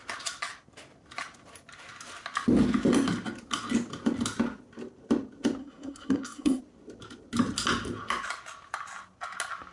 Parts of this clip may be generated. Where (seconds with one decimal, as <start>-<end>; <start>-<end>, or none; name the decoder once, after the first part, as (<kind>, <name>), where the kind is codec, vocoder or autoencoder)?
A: 5.6-6.6 (codec, SNAC)